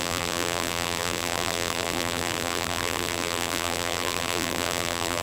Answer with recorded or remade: remade